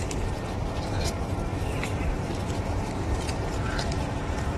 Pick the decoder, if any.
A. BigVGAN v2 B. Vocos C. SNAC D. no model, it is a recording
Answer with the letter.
A